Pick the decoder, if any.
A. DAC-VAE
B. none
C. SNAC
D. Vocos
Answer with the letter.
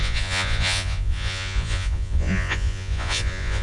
D